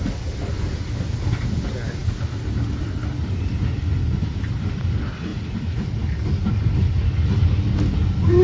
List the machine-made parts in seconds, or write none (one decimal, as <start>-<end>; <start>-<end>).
none